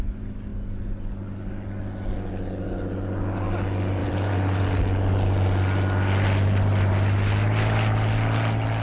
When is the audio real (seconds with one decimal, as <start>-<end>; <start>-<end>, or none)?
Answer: 0.0-4.0; 4.6-8.8